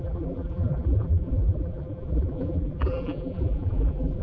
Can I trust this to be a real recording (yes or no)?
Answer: no